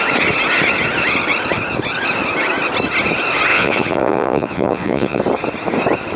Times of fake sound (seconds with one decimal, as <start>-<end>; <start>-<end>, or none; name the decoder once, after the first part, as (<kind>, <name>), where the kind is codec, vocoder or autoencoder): 3.5-5.2 (vocoder, Vocos)